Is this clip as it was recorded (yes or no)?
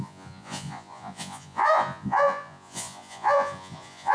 no